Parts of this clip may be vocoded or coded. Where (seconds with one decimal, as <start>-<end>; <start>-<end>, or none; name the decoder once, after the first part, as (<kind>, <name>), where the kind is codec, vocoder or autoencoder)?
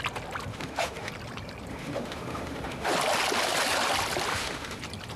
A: 0.5-1.1 (autoencoder, DAC-VAE); 1.7-2.9; 4.3-4.8